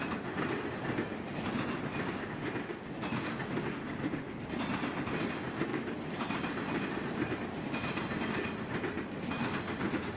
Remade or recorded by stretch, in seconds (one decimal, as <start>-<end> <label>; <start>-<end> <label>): 0.0-5.7 recorded; 5.7-7.4 remade; 7.4-10.2 recorded